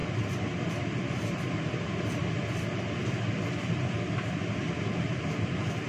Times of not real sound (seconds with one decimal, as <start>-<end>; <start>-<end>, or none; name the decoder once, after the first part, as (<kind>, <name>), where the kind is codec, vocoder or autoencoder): 0.7-2.2 (vocoder, BigVGAN v2)